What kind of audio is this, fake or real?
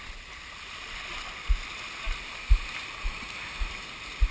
real